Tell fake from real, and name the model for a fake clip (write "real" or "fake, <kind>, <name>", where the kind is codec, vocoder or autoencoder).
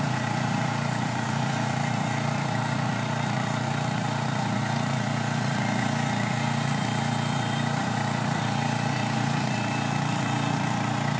fake, vocoder, Vocos